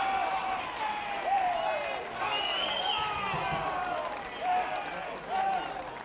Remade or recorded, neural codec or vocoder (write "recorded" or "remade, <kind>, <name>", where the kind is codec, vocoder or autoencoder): recorded